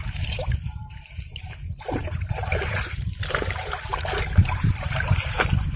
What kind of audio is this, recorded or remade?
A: remade